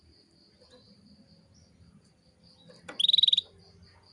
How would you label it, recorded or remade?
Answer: recorded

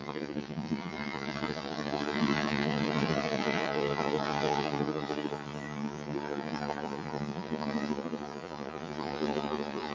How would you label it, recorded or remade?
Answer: remade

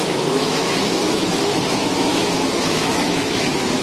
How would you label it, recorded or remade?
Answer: remade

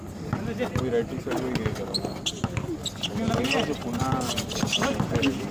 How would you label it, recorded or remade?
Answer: recorded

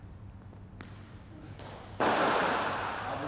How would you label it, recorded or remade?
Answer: recorded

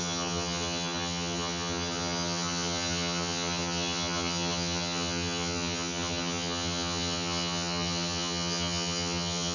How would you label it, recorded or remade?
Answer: remade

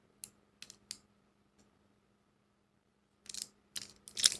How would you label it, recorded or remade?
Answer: recorded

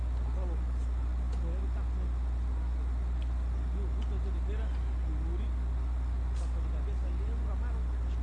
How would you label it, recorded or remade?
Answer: recorded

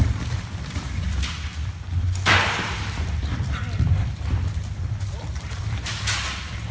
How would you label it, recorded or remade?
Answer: remade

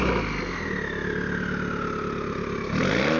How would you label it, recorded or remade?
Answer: recorded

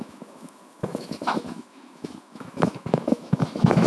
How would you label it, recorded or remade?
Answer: remade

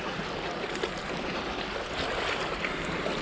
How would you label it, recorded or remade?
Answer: recorded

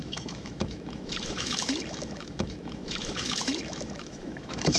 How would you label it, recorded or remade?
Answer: remade